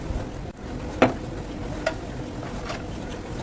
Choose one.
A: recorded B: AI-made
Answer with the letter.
A